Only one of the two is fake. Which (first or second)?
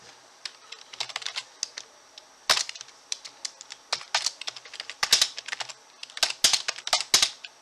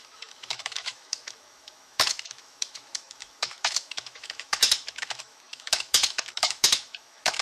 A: second